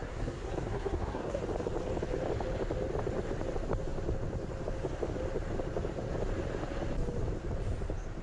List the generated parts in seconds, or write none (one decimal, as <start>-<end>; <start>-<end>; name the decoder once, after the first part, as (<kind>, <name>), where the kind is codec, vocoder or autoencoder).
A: 0.0-1.4 (codec, SNAC)